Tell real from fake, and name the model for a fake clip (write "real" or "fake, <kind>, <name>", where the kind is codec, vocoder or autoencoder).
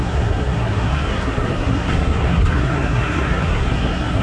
fake, codec, SNAC